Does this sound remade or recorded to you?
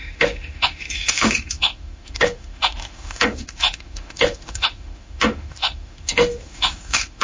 remade